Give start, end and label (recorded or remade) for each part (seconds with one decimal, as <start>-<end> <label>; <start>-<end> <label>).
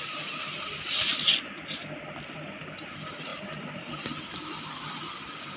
0.0-5.6 recorded